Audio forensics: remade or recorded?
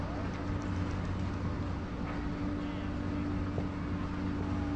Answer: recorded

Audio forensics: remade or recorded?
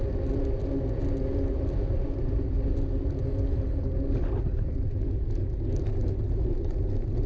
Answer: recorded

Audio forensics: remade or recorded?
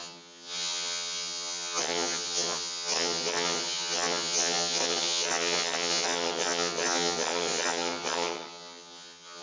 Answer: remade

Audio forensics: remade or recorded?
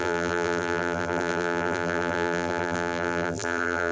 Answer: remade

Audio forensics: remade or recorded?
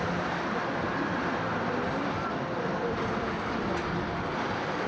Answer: remade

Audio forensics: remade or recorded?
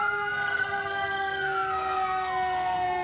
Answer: remade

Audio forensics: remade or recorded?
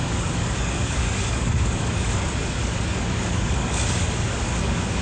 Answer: remade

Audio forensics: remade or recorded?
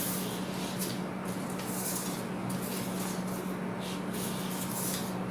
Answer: recorded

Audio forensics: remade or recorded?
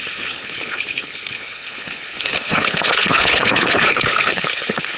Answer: remade